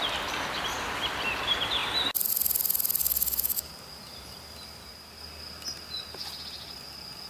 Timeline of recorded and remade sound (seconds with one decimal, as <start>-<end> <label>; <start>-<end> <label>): 0.0-3.0 recorded; 3.0-3.7 remade; 3.7-7.3 recorded